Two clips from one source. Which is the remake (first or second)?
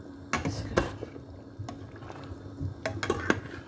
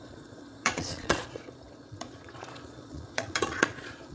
second